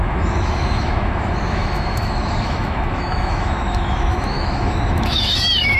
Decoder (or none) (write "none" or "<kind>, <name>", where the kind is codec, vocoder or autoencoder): autoencoder, DAC-VAE